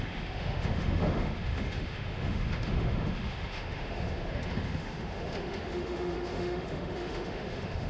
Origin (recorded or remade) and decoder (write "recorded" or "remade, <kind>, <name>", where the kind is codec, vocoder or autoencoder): remade, autoencoder, DAC-VAE